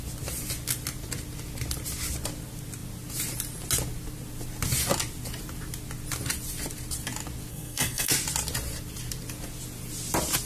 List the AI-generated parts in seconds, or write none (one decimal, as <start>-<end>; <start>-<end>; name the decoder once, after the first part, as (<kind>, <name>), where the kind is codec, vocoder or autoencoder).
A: 7.5-8.1 (codec, SNAC)